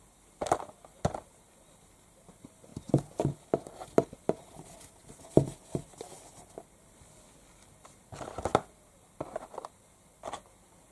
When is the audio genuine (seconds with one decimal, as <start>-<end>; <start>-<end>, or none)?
0.0-10.9